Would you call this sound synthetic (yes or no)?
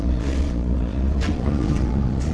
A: yes